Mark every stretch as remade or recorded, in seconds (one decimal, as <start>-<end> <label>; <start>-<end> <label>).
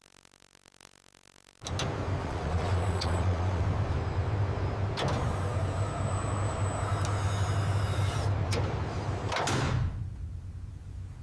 0.0-2.2 recorded; 2.2-3.6 remade; 3.6-11.2 recorded